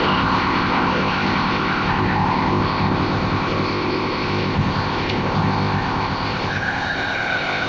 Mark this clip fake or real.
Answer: fake